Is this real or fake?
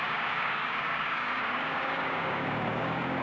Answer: fake